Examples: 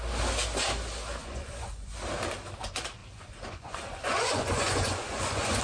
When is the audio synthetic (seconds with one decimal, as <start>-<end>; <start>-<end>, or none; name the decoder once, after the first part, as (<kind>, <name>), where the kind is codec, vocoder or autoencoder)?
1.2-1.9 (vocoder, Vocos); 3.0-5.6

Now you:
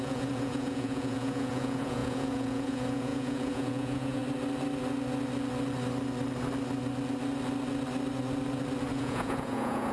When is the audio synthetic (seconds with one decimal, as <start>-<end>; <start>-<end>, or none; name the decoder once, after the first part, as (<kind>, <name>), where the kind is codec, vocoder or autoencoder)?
0.0-4.2 (vocoder, Vocos); 8.9-9.9

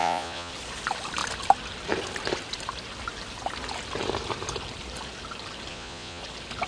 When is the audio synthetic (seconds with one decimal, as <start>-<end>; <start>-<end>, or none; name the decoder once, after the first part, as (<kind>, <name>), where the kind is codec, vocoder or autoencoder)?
0.0-0.5 (vocoder, Vocos); 5.7-6.2